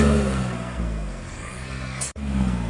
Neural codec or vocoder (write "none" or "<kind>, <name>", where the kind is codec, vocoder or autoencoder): codec, SNAC